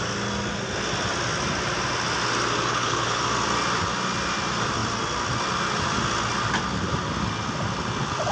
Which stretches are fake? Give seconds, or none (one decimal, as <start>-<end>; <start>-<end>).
2.7-3.2